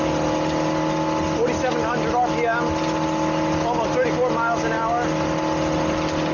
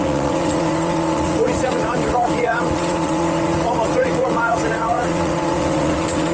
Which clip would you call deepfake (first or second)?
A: second